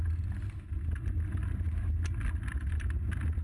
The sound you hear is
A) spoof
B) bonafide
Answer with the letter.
B